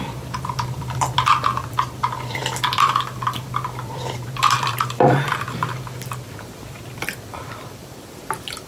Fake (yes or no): yes